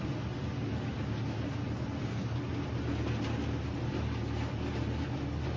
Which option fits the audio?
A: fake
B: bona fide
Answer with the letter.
B